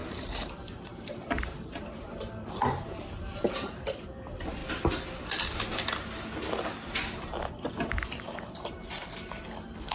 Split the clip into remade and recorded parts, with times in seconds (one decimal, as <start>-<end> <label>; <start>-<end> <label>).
0.0-4.6 remade; 4.6-7.5 recorded; 7.5-9.9 remade